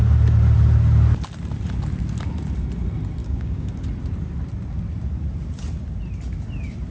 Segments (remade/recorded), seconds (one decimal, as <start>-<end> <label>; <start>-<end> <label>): 0.0-3.2 recorded; 3.2-3.7 remade; 3.7-6.9 recorded